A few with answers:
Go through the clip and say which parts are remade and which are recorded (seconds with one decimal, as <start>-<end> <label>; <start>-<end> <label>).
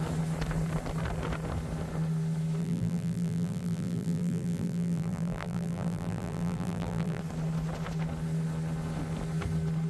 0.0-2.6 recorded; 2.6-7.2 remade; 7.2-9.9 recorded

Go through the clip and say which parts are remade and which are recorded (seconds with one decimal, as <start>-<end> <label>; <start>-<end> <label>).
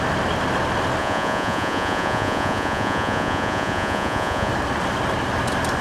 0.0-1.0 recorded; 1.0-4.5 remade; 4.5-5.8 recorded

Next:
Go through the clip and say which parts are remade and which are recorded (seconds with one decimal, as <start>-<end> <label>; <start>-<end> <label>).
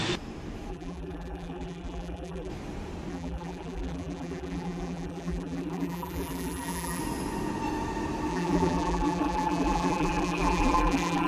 0.0-0.7 recorded; 0.7-2.5 remade; 2.5-3.1 recorded; 3.1-7.0 remade; 7.0-8.3 recorded; 8.3-11.3 remade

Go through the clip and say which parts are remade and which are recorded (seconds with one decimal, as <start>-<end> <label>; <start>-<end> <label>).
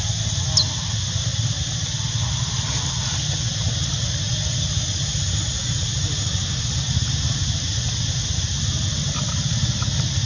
0.0-10.3 recorded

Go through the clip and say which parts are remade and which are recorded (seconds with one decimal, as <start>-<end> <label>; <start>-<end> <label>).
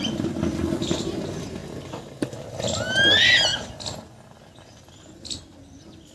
0.0-6.1 recorded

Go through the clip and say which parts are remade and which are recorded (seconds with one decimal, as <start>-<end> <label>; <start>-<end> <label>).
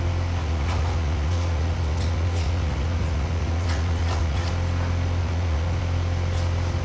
0.0-0.4 recorded; 0.4-4.5 remade; 4.5-5.2 recorded; 5.2-5.8 remade; 5.8-6.8 recorded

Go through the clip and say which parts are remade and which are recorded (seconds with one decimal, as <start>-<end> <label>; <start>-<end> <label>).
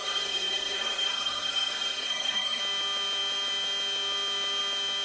0.0-2.6 remade; 2.6-5.0 recorded